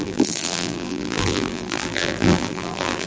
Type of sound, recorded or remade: remade